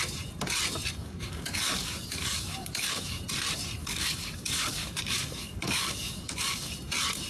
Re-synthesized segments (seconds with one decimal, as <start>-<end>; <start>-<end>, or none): 1.0-3.2; 3.8-6.7